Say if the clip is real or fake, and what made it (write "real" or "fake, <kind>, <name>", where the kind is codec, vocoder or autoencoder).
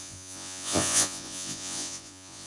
fake, vocoder, Vocos